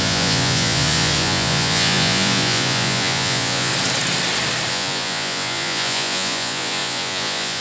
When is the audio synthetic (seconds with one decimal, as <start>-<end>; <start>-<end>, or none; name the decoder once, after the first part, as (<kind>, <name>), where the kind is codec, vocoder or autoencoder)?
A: 0.0-3.7 (vocoder, Vocos); 4.7-7.6

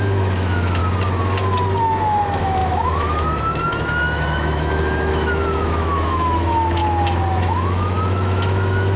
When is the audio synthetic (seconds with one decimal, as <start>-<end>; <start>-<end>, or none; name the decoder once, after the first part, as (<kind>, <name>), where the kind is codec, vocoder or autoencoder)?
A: 0.0-0.8 (autoencoder, DAC-VAE); 1.8-6.8; 7.4-9.0

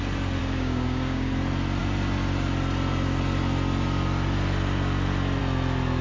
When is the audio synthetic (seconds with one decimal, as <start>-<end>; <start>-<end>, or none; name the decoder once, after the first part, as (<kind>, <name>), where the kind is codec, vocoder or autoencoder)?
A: 0.4-1.3 (codec, DAC)